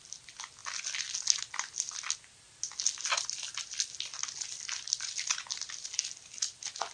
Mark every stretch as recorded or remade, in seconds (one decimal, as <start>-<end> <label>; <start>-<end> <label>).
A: 0.0-6.9 recorded